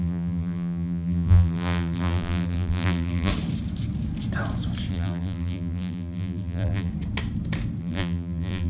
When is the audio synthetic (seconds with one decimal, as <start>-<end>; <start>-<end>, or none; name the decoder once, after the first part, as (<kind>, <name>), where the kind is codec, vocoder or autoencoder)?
0.0-3.3 (vocoder, BigVGAN v2); 4.9-6.9; 7.8-8.7